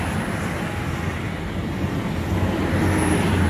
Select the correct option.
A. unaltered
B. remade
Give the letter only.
A